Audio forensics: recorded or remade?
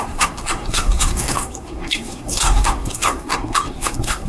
remade